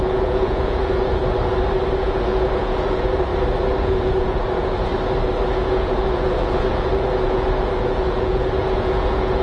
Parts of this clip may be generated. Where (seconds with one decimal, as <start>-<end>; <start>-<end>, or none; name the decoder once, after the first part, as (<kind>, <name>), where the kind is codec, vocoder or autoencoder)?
0.0-1.2 (vocoder, Vocos); 1.9-3.3; 3.8-4.9; 5.5-9.4